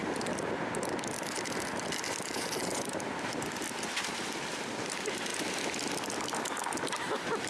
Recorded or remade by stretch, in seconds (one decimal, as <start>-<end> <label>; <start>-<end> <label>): 0.0-7.5 recorded